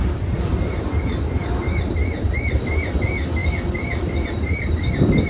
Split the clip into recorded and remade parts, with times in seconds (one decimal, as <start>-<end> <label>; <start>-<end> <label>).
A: 0.0-5.3 remade